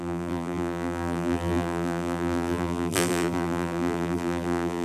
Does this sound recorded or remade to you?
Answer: remade